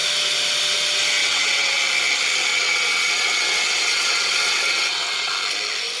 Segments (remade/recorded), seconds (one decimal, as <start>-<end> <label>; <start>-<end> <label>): 0.0-1.2 recorded; 1.2-1.8 remade; 1.8-2.5 recorded; 2.5-5.3 remade; 5.3-6.0 recorded